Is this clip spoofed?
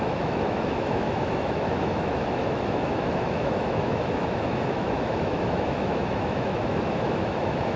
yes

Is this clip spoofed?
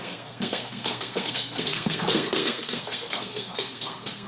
yes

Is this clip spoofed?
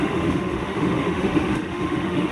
yes